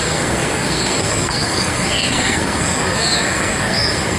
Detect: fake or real fake